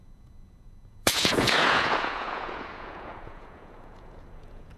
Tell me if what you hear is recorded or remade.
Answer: remade